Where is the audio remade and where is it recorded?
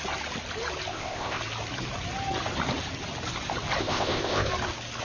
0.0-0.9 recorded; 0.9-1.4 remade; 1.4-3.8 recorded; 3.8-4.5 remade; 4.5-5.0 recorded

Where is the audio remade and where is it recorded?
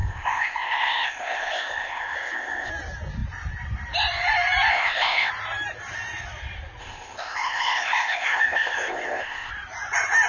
0.0-2.7 remade; 2.7-4.7 recorded; 4.7-5.3 remade; 5.3-6.8 recorded; 6.8-9.5 remade; 9.5-10.3 recorded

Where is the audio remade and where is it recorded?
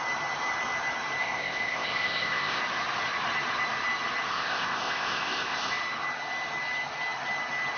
0.0-1.2 recorded; 1.2-2.6 remade; 2.6-4.3 recorded; 4.3-5.7 remade; 5.7-7.8 recorded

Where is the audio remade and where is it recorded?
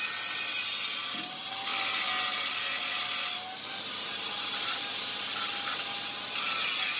0.0-7.0 recorded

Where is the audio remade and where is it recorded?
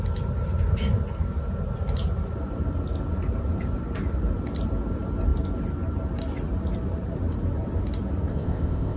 0.0-8.3 recorded; 8.3-9.0 remade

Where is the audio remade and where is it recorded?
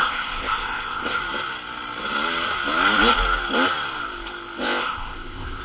0.0-1.2 remade; 1.2-4.6 recorded; 4.6-5.6 remade